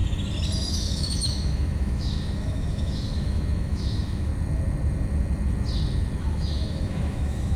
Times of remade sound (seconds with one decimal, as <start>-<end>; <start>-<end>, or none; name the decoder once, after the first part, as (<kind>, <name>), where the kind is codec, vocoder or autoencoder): 0.7-4.3 (autoencoder, DAC-VAE); 6.2-7.6